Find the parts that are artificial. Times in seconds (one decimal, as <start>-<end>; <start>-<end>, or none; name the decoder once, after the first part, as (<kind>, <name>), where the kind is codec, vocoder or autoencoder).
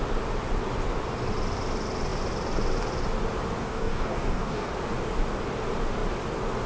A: 3.6-4.7 (codec, DAC)